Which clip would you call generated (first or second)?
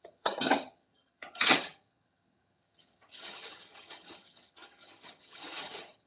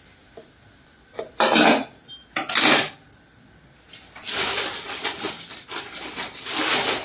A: first